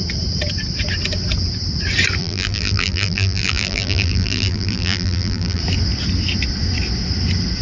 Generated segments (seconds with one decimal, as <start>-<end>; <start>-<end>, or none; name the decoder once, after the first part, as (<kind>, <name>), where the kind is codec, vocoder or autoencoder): 2.2-5.6 (vocoder, BigVGAN v2)